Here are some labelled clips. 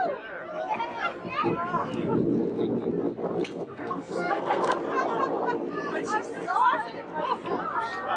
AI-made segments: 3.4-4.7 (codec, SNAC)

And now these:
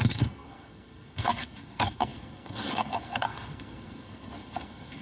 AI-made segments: 0.0-5.0 (codec, SNAC)

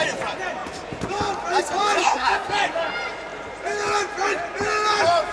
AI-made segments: 2.0-2.5 (codec, SNAC)